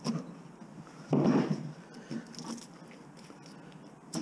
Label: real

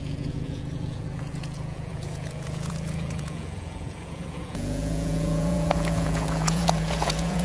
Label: fake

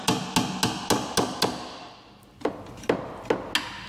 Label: real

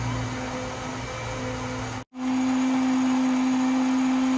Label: real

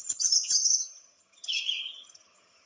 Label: fake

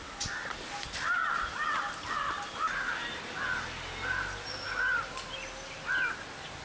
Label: real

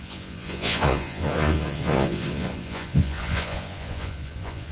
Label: fake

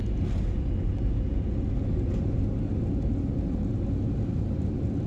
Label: real